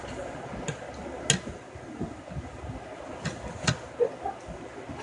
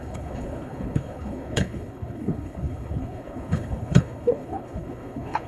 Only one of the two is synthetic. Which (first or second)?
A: second